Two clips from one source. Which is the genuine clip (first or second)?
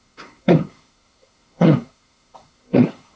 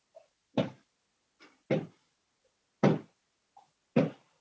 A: second